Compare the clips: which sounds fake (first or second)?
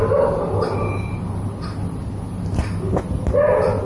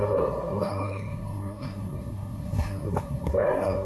second